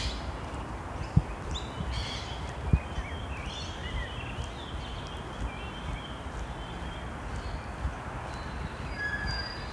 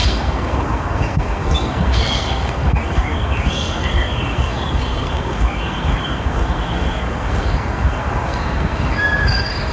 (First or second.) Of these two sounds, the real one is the first